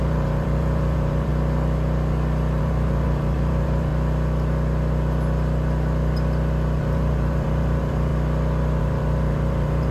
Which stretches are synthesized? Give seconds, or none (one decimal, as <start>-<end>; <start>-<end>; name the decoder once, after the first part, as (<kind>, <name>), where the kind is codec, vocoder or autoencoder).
0.0-1.3 (vocoder, BigVGAN v2); 2.6-3.9; 6.8-8.1; 8.8-9.9